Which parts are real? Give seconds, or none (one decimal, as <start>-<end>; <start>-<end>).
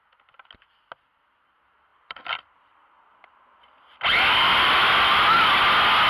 0.0-1.9; 5.6-6.1